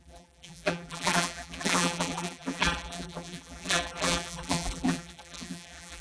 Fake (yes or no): yes